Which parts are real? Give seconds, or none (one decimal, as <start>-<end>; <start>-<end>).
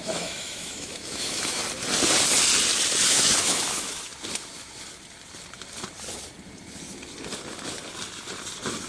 1.6-3.1; 4.1-8.9